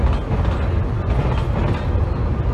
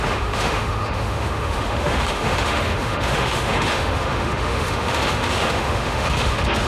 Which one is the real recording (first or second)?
first